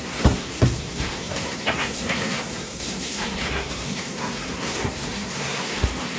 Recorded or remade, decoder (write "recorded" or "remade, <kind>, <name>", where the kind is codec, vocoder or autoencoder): remade, codec, SNAC